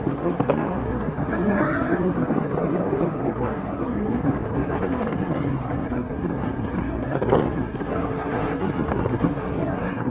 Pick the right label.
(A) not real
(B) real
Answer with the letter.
A